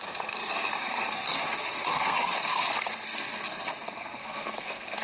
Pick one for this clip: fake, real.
fake